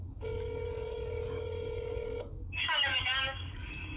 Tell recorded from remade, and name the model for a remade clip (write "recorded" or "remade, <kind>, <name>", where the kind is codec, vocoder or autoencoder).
remade, codec, DAC